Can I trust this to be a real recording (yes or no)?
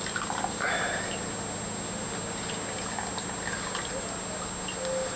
yes